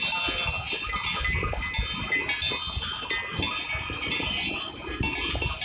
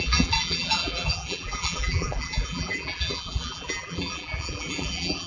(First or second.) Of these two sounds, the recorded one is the first